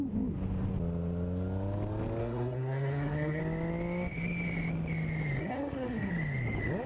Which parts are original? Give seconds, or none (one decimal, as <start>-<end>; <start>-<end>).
0.0-2.2; 3.4-5.4; 6.1-6.9